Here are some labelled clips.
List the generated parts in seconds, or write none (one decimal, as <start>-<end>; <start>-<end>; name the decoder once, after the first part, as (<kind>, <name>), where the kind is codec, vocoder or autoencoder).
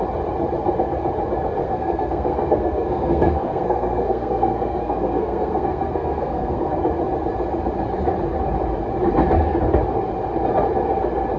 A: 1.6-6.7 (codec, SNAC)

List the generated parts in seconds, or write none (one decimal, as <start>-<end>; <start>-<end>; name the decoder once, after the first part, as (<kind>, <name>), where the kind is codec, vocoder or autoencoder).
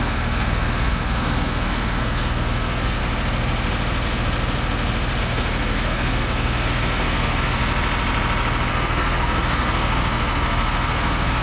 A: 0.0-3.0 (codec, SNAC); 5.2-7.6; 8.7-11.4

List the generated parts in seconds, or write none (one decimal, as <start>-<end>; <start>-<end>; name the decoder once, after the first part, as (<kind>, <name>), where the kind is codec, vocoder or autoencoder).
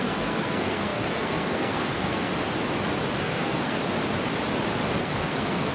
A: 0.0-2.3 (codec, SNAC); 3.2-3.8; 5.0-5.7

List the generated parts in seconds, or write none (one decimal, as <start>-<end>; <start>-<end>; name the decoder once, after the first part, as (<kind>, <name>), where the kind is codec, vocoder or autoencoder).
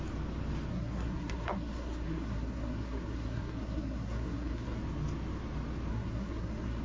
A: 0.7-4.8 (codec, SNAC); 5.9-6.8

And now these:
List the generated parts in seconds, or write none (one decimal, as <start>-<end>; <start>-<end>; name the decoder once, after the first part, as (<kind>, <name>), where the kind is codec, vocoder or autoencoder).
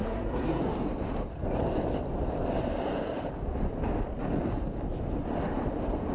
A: 0.0-0.6 (codec, SNAC)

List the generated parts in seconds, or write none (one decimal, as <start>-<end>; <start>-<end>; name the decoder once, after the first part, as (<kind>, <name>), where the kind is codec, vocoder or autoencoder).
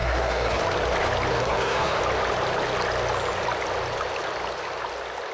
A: 0.0-0.6 (codec, SNAC); 1.3-2.0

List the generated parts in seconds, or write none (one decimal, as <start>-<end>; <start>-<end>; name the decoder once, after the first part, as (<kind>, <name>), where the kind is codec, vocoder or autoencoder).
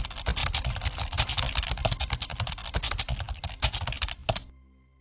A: none